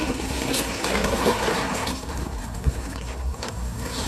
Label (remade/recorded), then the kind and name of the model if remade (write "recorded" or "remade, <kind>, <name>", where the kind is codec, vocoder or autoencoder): remade, codec, SNAC